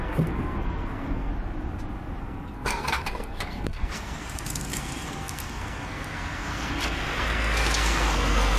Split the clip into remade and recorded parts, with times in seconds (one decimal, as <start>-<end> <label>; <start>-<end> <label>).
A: 0.0-1.3 remade; 1.3-2.2 recorded; 2.2-8.6 remade